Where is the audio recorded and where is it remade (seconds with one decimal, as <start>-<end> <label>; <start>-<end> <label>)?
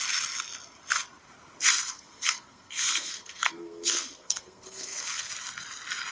0.0-1.8 recorded; 1.8-5.3 remade; 5.3-6.1 recorded